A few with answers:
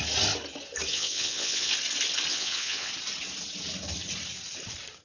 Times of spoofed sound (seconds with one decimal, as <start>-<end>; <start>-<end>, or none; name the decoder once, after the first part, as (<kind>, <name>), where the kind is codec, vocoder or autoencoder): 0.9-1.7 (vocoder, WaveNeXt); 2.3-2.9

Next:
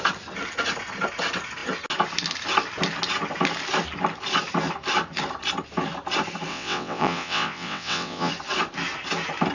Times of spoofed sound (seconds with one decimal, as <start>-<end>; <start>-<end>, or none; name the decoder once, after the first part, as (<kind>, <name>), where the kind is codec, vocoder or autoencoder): 6.5-8.3 (vocoder, WaveNeXt)

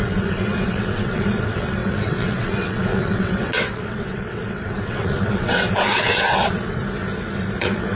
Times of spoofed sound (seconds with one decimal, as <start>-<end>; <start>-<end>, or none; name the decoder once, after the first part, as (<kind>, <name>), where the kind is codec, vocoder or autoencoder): 0.0-6.8 (vocoder, WaveNeXt); 7.6-8.0

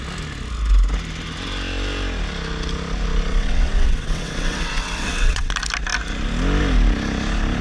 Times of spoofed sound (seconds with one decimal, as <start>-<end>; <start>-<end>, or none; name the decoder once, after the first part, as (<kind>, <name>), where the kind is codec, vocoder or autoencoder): 3.3-5.5 (vocoder, WaveNeXt)

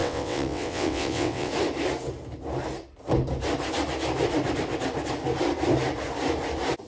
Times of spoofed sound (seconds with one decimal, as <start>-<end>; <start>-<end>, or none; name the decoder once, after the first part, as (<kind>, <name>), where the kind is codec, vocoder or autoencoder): 0.0-1.5 (vocoder, WaveNeXt)

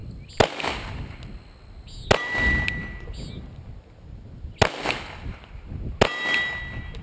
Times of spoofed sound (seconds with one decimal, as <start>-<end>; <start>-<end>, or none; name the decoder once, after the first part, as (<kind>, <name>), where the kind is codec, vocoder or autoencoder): none